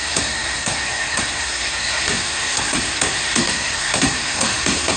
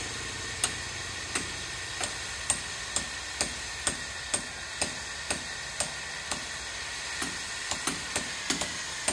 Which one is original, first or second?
second